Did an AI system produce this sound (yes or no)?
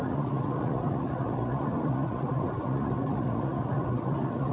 yes